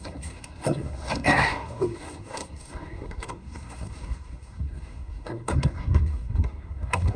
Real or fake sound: fake